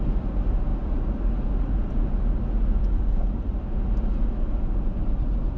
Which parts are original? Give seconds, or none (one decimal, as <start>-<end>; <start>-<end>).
0.0-5.6